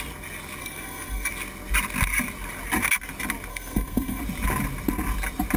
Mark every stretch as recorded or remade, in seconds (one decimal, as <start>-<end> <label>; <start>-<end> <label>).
0.0-0.6 recorded; 0.6-1.3 remade; 1.3-3.5 recorded; 3.5-4.2 remade; 4.2-5.6 recorded